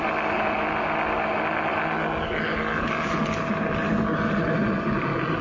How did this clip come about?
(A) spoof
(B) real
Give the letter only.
B